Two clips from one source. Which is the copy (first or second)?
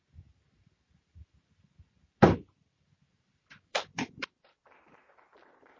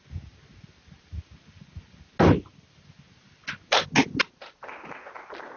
first